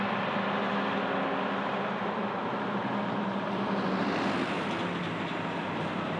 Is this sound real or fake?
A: real